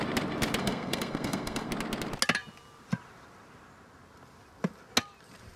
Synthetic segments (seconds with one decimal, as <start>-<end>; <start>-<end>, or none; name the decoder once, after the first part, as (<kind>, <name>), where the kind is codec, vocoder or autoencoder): 0.6-1.7 (codec, SNAC)